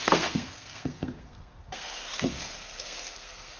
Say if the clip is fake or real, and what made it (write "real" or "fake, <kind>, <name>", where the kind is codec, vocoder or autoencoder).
fake, codec, SNAC